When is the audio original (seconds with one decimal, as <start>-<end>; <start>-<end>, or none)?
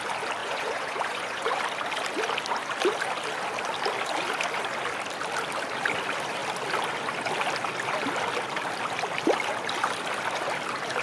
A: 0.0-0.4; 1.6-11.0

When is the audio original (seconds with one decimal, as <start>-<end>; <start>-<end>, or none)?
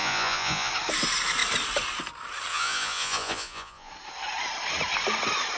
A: 0.7-2.5; 3.9-5.6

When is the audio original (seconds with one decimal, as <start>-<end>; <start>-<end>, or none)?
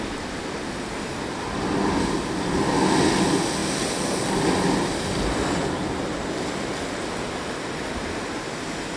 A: 0.0-9.0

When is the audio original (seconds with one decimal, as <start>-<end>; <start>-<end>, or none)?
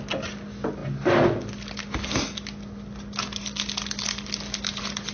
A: 0.0-5.1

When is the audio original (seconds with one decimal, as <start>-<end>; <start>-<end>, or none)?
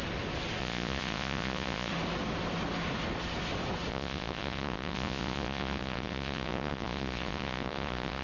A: 0.0-0.6; 1.9-3.9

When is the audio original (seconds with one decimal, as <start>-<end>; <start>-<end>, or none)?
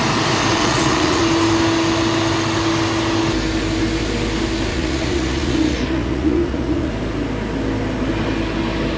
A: 0.0-0.6; 1.2-4.7; 6.9-9.0